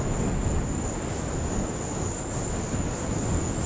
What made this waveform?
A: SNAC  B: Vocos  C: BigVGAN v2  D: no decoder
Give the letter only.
D